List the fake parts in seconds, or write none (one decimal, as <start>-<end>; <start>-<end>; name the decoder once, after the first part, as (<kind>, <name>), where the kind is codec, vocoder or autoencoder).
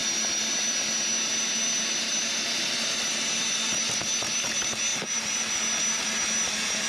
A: 4.9-5.5 (vocoder, BigVGAN v2)